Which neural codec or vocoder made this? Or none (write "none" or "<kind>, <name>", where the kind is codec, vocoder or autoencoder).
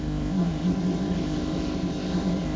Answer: codec, ZipCodec